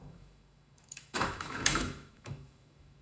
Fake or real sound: fake